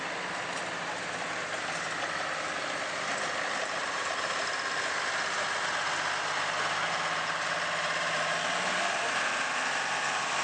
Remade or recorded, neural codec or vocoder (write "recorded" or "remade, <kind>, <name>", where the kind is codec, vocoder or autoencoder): recorded